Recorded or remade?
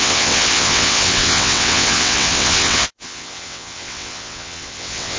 remade